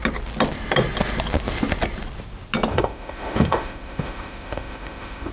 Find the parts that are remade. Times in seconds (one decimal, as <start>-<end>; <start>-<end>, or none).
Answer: 2.7-5.3